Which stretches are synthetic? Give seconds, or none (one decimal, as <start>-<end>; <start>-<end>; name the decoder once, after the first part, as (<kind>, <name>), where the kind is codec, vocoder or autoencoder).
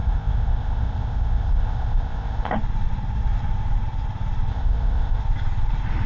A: 0.0-2.5 (codec, ZipCodec); 4.5-5.2